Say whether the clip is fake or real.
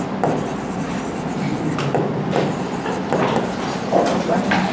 real